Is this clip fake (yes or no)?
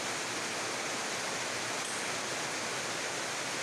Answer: no